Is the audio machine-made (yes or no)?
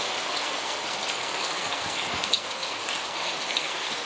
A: yes